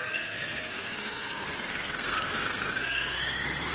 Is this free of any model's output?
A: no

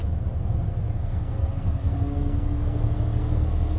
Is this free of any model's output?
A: no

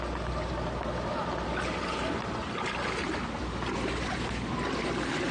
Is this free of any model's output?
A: yes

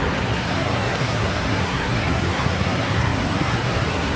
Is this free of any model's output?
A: no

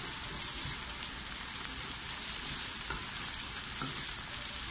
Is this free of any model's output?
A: yes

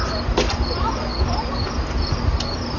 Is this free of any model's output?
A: yes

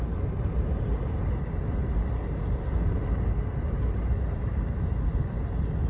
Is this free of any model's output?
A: yes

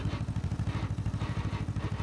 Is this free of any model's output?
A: yes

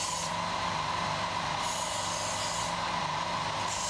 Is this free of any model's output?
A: yes